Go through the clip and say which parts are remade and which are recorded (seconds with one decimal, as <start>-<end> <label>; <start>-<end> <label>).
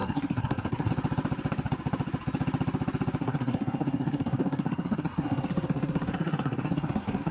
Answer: 0.0-0.9 remade; 0.9-3.2 recorded; 3.2-7.3 remade